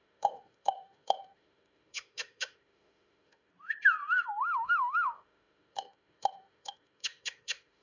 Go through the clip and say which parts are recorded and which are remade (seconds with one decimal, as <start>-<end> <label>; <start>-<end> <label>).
0.0-3.5 remade; 3.5-4.4 recorded; 4.4-7.8 remade